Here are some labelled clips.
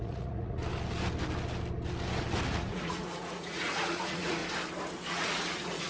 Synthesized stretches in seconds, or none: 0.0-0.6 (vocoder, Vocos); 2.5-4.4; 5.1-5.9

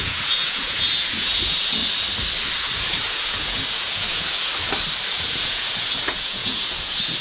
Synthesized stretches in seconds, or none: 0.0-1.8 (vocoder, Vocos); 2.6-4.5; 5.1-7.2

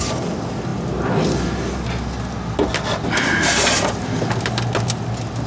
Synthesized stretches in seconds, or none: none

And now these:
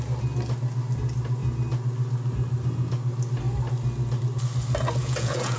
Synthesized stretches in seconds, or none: 5.0-5.6 (vocoder, Vocos)

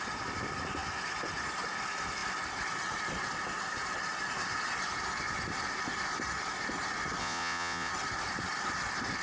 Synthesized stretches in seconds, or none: 7.2-7.9 (vocoder, Vocos)

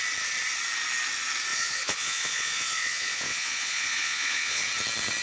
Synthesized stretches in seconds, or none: 1.5-4.6 (vocoder, Vocos)